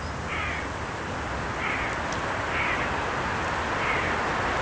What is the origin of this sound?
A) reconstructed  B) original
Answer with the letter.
B